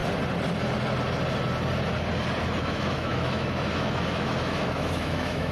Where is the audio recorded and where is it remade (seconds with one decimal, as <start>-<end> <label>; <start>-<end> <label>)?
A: 0.0-2.6 recorded; 2.6-5.5 remade